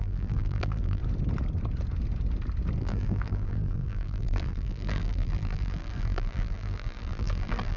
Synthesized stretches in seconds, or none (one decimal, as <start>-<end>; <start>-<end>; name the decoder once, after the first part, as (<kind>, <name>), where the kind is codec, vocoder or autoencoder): 0.0-1.0 (vocoder, BigVGAN v2); 2.8-7.8